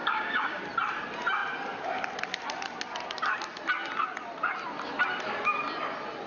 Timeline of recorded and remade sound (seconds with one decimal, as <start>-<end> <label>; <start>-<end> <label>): 0.0-0.6 remade; 0.6-6.3 recorded